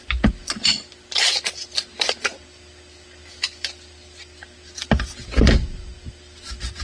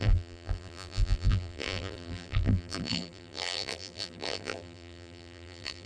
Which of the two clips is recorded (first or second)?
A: first